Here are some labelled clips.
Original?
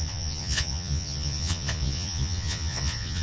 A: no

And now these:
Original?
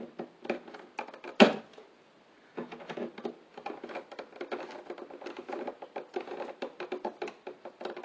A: yes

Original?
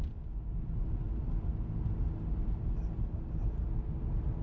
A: yes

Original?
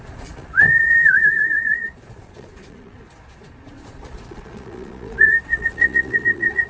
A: no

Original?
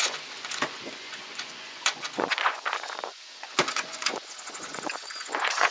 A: no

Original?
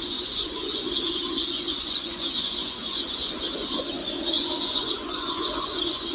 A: no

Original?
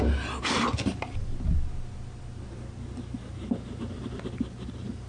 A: yes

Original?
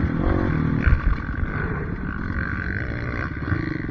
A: yes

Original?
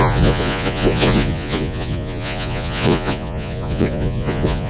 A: no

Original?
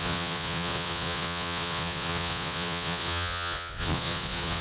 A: no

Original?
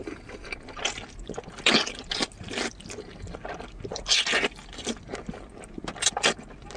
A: yes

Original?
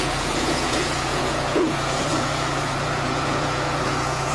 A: no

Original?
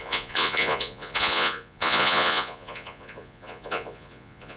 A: no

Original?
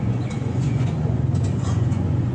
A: no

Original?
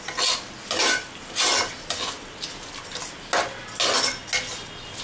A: yes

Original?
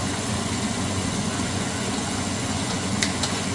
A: no